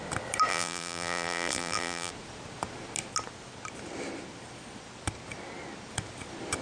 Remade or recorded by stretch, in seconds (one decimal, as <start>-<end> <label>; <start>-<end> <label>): 0.0-0.5 recorded; 0.5-2.1 remade; 2.1-6.6 recorded